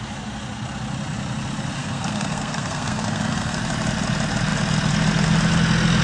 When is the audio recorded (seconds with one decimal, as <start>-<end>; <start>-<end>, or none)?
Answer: 0.0-1.8; 3.6-6.0